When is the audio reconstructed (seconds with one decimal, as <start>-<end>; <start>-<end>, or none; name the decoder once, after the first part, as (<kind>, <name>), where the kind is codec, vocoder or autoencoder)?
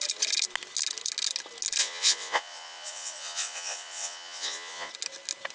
1.8-4.9 (vocoder, Vocos)